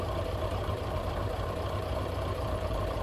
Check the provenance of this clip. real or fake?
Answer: fake